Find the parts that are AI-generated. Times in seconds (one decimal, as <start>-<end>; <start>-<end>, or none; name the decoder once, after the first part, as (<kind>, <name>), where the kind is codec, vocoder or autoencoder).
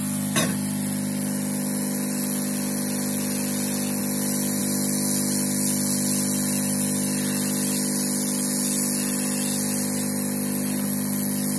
none